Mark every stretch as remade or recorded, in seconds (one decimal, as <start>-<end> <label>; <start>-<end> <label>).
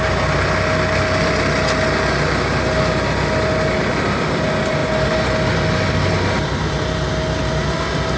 0.0-8.2 recorded